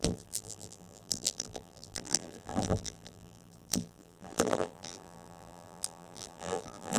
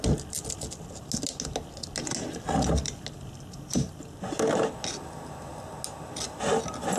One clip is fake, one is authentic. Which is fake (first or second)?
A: first